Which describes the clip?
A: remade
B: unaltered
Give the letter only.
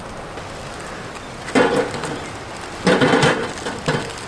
B